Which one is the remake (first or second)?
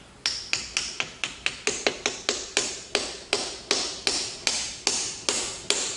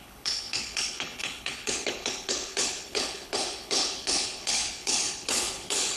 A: second